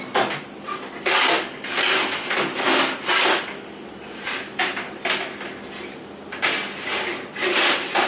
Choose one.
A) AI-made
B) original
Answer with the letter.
B